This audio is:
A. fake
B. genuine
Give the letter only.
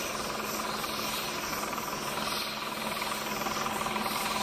B